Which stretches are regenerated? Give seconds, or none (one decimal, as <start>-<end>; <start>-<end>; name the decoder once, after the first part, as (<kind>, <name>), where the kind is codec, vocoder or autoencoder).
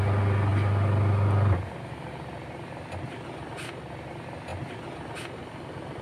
0.5-4.1 (vocoder, BigVGAN v2); 4.5-5.2